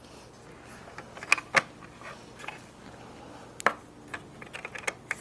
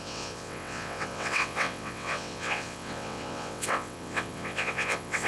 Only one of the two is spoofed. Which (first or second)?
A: second